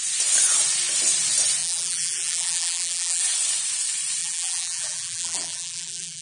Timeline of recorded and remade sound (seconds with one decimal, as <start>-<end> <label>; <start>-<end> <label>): 0.0-1.6 recorded; 1.6-3.2 remade; 3.2-4.2 recorded; 4.2-6.2 remade